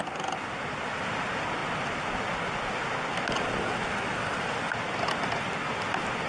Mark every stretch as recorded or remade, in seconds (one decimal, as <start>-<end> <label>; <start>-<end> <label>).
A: 0.0-6.3 recorded